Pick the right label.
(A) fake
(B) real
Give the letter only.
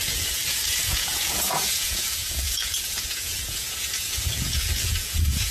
A